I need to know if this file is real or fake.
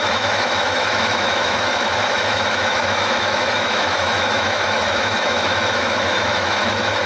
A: fake